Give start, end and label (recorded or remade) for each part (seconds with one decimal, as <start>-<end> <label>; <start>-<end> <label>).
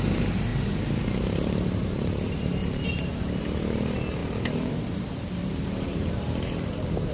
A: 0.0-0.5 remade; 0.5-1.8 recorded; 1.8-2.6 remade; 2.6-3.6 recorded; 3.6-7.1 remade